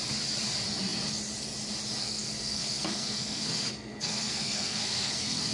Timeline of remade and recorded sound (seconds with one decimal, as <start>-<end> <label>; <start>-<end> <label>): 0.0-2.0 recorded; 2.0-5.5 remade